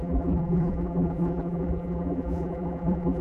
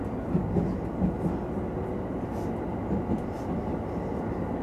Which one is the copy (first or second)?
first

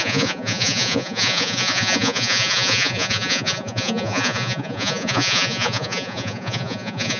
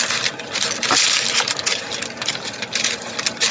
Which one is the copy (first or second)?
first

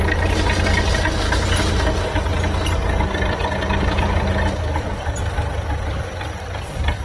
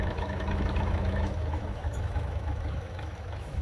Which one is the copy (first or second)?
second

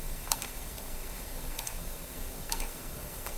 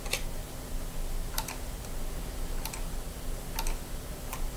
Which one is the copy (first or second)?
first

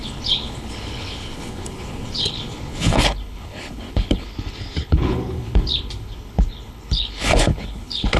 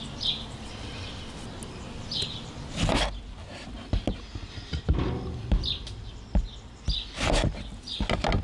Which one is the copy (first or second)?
first